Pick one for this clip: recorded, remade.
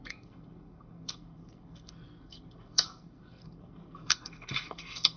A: remade